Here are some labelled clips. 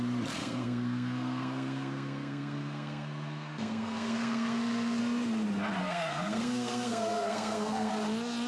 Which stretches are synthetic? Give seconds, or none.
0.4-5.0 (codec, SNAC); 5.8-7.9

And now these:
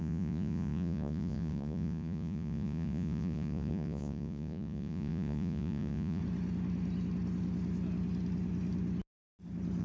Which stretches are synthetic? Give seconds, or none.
0.0-6.2 (vocoder, Vocos)